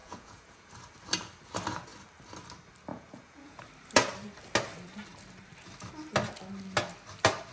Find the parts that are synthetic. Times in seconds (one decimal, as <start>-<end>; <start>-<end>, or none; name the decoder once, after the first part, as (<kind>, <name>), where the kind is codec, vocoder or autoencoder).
0.0-0.7 (vocoder, Vocos); 2.9-3.6